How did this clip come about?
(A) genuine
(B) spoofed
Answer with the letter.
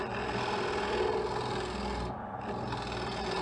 A